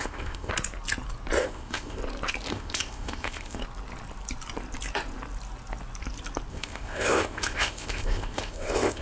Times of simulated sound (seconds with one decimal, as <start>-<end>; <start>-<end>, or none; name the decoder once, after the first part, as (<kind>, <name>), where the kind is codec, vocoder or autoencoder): 0.0-0.5 (codec, ZipCodec); 1.4-2.0; 2.5-3.6; 6.5-9.0